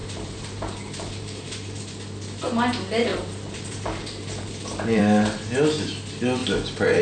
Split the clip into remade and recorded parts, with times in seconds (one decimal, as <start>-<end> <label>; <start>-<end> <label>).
0.0-1.8 remade; 1.8-3.1 recorded; 3.1-5.0 remade; 5.0-7.0 recorded